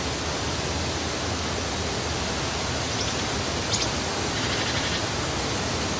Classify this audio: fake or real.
real